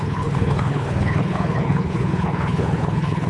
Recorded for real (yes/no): no